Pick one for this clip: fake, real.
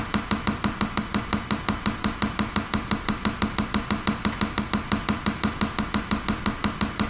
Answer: real